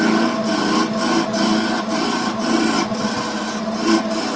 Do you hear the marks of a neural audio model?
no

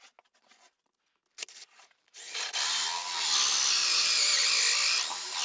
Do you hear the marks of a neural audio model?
no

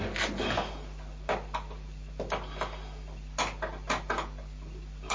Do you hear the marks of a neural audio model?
no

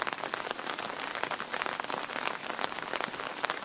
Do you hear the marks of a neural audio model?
no